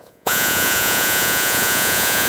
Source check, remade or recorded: remade